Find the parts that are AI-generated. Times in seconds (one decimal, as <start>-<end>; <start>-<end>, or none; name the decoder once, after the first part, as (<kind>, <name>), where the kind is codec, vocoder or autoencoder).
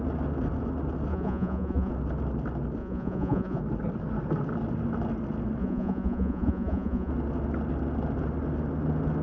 1.1-1.9 (vocoder, Vocos); 2.8-3.6; 5.6-7.1